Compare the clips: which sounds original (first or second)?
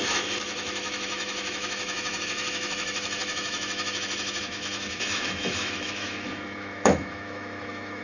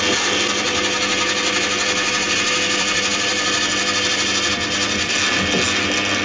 second